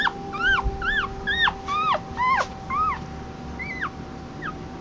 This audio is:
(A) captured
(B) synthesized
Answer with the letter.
A